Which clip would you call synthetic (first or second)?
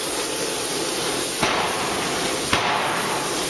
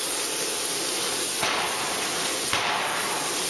second